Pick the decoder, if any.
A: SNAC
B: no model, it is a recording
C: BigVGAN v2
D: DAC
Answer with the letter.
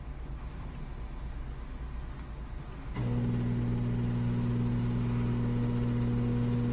B